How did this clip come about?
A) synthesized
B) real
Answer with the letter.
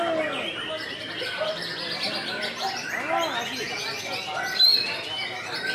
B